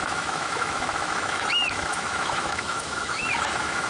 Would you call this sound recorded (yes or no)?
no